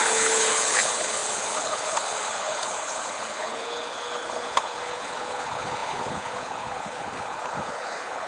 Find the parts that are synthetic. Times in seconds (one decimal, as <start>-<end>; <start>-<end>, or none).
0.0-8.3